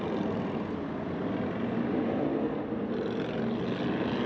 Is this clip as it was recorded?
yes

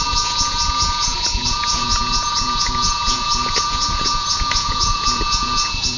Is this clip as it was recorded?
no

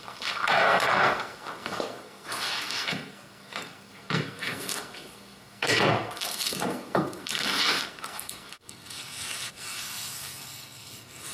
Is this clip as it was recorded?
no